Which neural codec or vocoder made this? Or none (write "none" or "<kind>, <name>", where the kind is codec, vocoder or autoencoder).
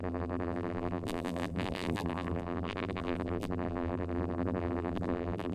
vocoder, BigVGAN v2